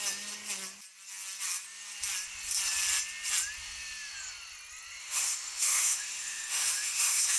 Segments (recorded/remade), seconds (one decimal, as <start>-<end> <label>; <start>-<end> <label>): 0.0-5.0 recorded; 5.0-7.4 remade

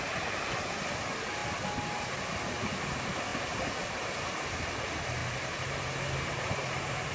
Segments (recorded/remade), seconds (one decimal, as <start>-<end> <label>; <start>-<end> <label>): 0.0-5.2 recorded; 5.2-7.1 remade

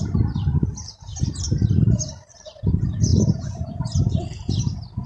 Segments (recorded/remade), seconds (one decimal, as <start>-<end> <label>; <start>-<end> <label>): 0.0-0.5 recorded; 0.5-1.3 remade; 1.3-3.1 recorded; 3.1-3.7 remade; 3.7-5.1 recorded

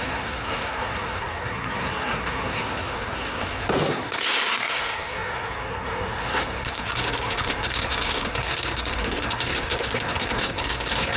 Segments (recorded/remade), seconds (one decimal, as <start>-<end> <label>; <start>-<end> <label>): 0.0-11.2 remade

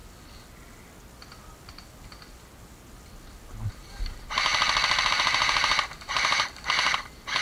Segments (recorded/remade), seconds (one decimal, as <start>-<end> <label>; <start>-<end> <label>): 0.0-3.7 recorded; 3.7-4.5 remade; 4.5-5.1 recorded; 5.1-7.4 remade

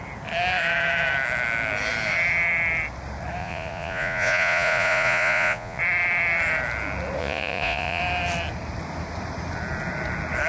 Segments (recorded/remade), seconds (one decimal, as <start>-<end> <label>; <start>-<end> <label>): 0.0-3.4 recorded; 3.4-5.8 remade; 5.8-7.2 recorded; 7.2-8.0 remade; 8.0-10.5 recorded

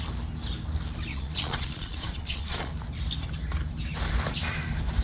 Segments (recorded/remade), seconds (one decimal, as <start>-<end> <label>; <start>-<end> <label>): 0.0-1.1 recorded; 1.1-2.7 remade; 2.7-5.0 recorded

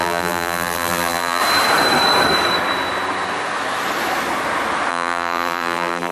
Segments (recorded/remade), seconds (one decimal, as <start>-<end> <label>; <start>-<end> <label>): 0.0-1.4 remade; 1.4-4.9 recorded; 4.9-6.1 remade